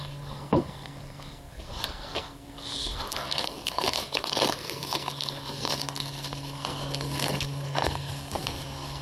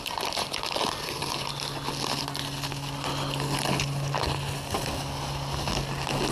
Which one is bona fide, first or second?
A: second